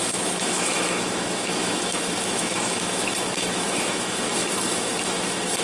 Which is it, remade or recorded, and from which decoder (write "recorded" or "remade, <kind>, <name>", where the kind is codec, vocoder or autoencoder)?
remade, autoencoder, DAC-VAE